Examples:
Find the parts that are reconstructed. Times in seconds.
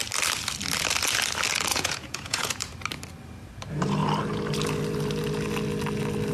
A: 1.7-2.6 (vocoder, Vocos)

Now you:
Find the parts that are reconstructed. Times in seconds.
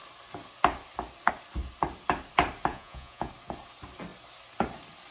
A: 2.7-3.3 (vocoder, Vocos)